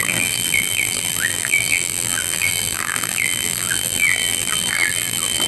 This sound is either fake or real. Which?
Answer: fake